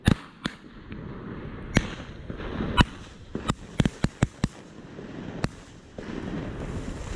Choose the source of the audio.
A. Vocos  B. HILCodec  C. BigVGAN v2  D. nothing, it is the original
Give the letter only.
D